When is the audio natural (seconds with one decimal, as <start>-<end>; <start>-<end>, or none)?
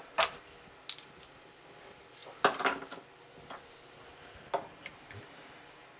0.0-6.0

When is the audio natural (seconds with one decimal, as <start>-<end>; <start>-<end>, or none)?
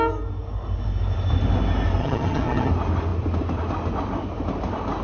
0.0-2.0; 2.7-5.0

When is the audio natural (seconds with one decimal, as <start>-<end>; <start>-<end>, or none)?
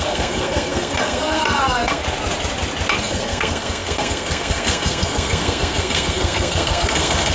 2.0-3.0